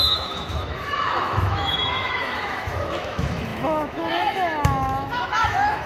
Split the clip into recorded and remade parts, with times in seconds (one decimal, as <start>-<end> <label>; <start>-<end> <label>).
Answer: 0.0-5.9 remade